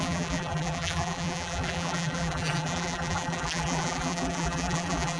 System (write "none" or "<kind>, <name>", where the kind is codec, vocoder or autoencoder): vocoder, BigVGAN v2